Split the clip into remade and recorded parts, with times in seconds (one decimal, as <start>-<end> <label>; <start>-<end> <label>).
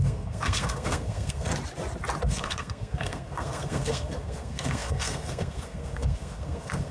0.0-1.5 remade; 1.5-2.2 recorded; 2.2-6.9 remade